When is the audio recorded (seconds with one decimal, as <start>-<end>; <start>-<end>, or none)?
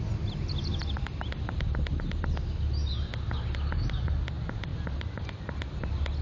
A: 0.0-4.7; 5.3-6.2